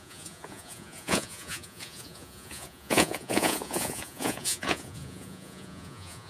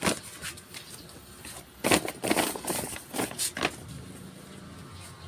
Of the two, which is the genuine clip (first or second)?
second